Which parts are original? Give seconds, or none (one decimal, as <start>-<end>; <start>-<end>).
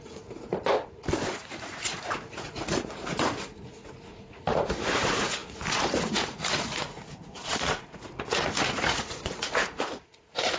0.7-1.3